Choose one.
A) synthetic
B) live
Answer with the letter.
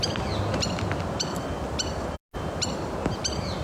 B